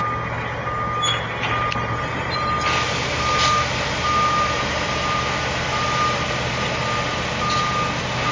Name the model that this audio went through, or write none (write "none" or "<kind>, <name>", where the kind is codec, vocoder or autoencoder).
none